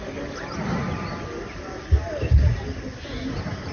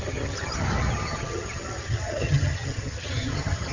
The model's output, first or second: second